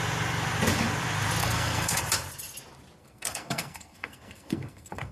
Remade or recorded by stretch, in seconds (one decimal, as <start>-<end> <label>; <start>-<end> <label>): 0.0-1.4 recorded; 1.4-2.0 remade; 2.0-3.0 recorded; 3.0-5.1 remade